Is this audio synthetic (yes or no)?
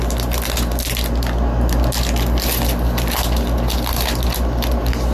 no